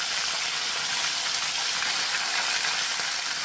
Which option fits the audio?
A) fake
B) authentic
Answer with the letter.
B